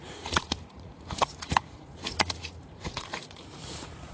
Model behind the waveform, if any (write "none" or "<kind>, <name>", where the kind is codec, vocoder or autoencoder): vocoder, Vocos